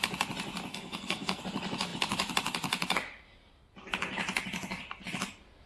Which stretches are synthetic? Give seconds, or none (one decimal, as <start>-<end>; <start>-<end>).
0.7-1.4